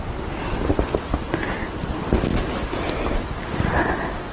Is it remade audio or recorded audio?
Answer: recorded